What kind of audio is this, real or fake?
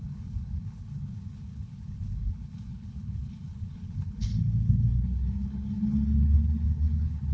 fake